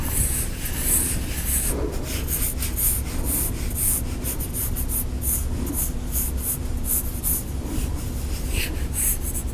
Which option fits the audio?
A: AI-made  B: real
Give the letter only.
B